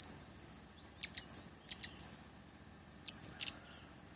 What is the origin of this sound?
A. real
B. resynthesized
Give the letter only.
A